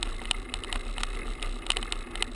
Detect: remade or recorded recorded